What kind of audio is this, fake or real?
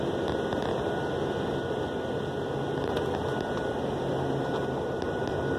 real